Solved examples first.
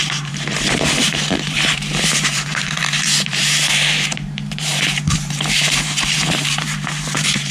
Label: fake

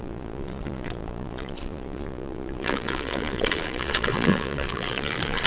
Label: fake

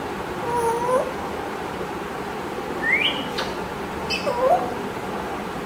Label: real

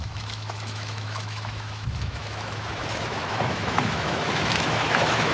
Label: fake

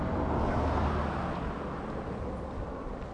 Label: real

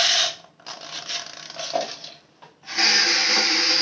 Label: real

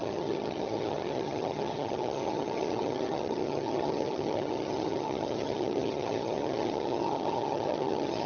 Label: fake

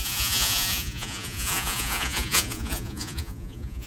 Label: fake